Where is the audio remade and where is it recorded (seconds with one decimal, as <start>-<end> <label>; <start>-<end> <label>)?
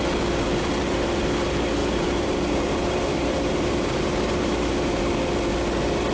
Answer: 0.0-1.8 recorded; 1.8-5.0 remade; 5.0-6.1 recorded